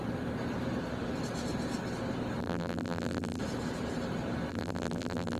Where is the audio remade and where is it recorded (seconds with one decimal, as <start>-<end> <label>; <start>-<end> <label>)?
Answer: 0.0-2.4 recorded; 2.4-3.4 remade; 3.4-4.5 recorded; 4.5-5.4 remade